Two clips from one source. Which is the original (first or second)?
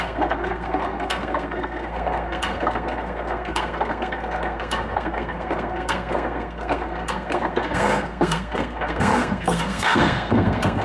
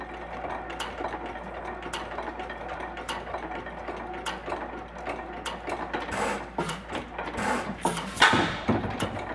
second